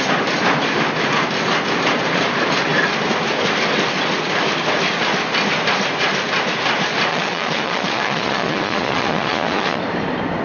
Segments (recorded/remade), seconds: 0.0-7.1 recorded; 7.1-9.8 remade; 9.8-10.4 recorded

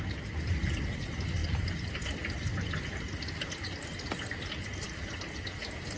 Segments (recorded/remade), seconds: 0.0-6.0 recorded